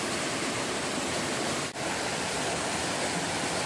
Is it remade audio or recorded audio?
recorded